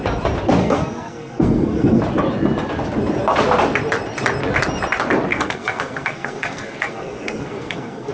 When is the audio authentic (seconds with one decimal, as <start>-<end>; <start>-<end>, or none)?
0.0-0.6; 2.0-5.3